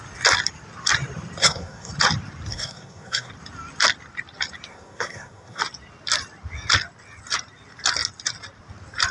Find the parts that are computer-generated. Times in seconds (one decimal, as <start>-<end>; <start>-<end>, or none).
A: 1.4-1.9; 2.5-3.3; 4.7-5.6